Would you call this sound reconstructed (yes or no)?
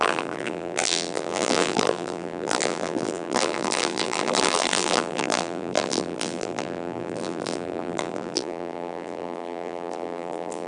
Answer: yes